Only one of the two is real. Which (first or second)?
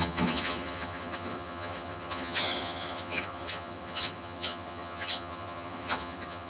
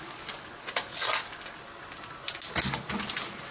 second